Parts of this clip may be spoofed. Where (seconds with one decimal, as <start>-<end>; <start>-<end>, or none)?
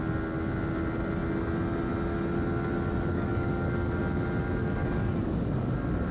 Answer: 3.1-4.0; 4.6-5.6